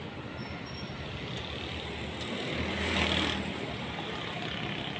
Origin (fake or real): real